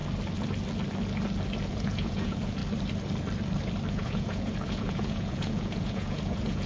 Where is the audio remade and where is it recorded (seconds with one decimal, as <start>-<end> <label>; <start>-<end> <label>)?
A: 0.0-1.7 recorded; 1.7-2.6 remade; 2.6-3.9 recorded; 3.9-6.7 remade